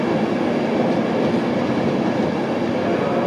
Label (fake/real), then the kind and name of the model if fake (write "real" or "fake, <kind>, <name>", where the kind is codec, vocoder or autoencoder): real